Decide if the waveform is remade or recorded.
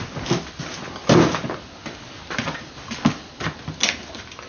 recorded